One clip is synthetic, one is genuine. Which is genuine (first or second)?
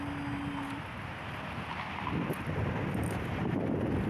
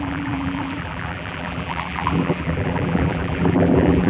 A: first